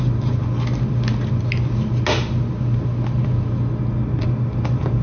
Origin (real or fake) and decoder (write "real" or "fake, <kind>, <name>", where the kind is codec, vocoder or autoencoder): real